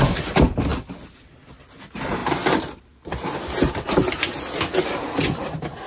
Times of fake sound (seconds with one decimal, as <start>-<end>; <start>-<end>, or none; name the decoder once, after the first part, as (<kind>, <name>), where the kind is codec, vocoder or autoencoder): none